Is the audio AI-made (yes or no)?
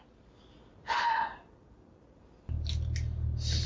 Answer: no